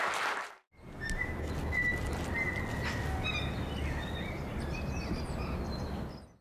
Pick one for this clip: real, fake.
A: real